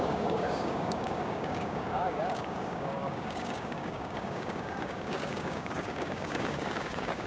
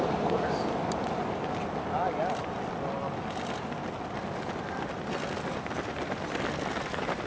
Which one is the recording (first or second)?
second